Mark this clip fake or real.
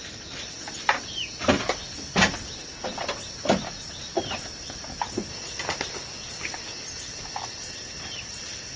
real